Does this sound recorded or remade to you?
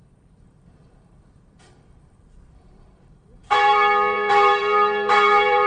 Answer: remade